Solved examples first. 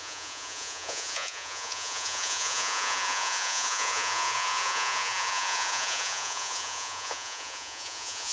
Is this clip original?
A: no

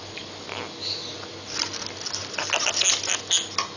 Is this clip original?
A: yes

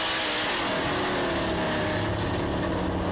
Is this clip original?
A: yes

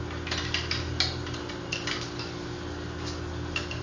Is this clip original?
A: yes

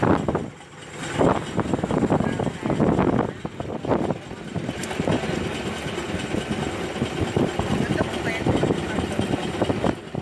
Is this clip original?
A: yes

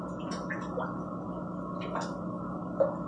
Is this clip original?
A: yes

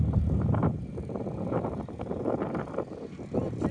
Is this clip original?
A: yes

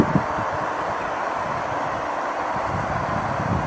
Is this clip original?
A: yes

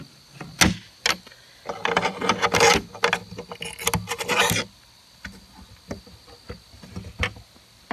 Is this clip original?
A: yes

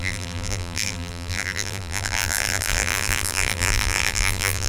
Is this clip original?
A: no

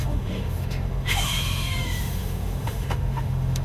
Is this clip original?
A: no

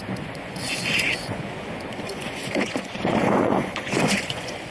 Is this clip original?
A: no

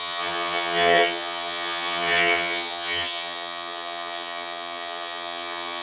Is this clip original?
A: no